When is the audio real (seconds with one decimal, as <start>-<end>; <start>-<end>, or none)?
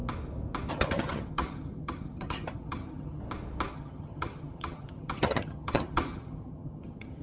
0.0-0.7; 3.2-3.7